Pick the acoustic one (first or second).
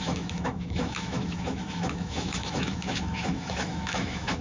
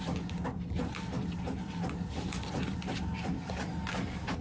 second